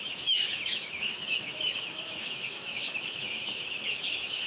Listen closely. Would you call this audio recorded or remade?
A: remade